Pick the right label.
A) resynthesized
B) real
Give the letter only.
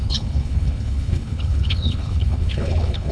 A